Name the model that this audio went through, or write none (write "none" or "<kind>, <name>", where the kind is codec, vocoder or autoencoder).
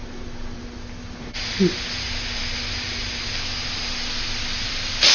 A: none